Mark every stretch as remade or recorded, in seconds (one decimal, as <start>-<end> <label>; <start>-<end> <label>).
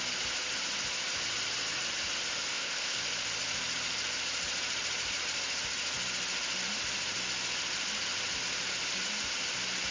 0.0-2.5 recorded; 2.5-3.0 remade; 3.0-9.9 recorded